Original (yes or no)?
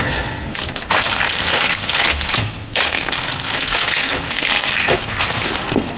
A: no